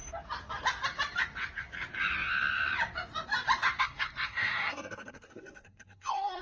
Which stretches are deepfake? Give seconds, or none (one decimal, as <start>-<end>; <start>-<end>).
3.8-6.4

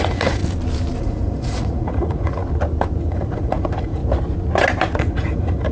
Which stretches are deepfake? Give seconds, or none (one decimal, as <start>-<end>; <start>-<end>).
0.0-0.4; 1.0-2.4; 3.0-4.0; 5.0-5.7

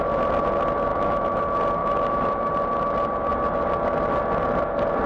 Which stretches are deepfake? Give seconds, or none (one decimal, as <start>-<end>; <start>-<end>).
0.9-1.4; 1.8-2.5

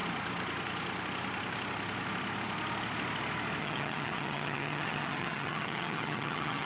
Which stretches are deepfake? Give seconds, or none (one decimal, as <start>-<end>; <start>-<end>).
3.6-6.7